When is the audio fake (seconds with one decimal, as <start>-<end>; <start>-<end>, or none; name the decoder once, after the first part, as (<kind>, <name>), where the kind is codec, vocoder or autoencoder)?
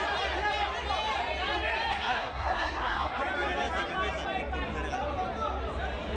1.9-3.2 (codec, SNAC)